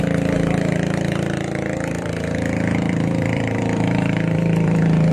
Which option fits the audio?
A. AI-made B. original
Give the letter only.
A